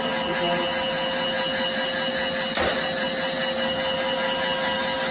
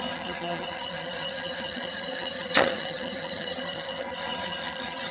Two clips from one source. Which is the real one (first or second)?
first